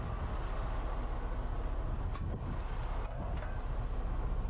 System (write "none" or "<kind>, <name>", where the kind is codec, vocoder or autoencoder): none